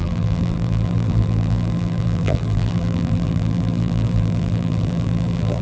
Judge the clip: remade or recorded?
remade